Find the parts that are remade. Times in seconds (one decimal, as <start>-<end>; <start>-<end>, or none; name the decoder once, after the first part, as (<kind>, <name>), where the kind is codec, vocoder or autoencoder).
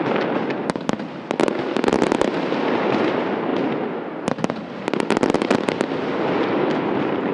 none